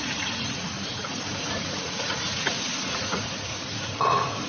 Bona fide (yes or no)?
no